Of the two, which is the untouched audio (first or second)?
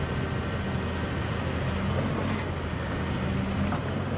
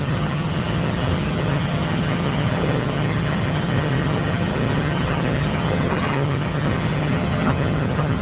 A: first